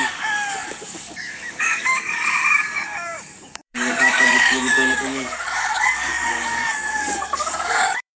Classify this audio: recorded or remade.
remade